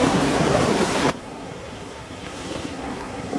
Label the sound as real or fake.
fake